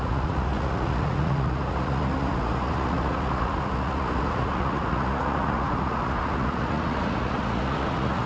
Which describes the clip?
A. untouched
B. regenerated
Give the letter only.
B